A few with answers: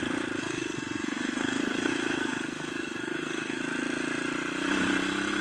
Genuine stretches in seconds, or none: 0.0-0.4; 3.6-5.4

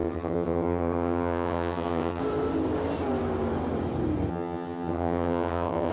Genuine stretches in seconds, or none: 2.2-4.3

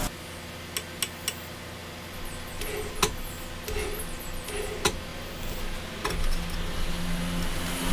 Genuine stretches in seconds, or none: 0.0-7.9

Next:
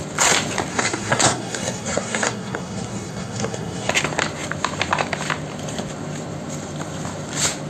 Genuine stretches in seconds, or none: 0.0-0.7; 3.9-7.7

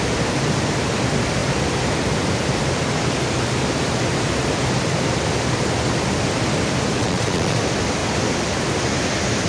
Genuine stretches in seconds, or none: 0.0-7.0; 7.6-9.5

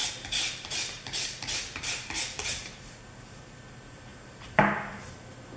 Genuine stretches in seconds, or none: 3.4-4.1; 5.1-5.6

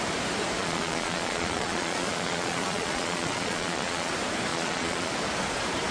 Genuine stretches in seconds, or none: 0.0-0.6; 4.1-4.5; 5.1-5.9